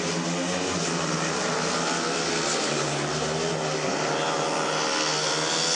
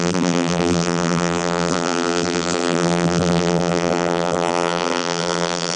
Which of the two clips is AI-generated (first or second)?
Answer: second